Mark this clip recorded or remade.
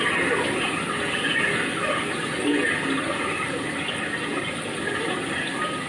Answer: recorded